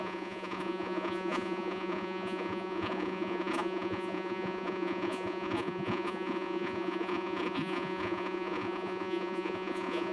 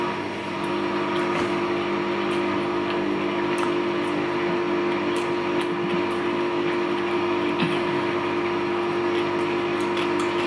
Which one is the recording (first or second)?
second